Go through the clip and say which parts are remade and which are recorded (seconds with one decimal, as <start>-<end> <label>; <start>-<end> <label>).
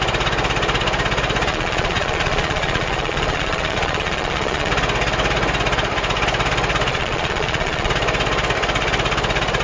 0.0-1.5 recorded; 1.5-4.7 remade; 4.7-6.9 recorded; 6.9-7.9 remade; 7.9-9.6 recorded